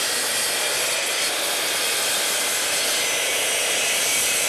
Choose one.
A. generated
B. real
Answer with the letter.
A